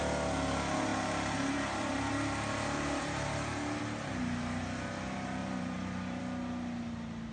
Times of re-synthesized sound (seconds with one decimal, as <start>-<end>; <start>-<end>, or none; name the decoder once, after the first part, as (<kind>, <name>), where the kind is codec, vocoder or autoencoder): 0.9-3.8 (vocoder, BigVGAN v2); 5.4-6.2